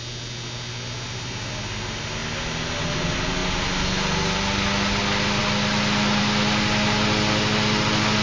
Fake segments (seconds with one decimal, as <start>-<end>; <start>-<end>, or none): none